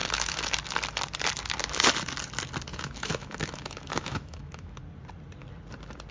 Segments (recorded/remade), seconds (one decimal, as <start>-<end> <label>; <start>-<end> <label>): 0.0-0.5 remade; 0.5-2.7 recorded; 2.7-4.8 remade; 4.8-6.1 recorded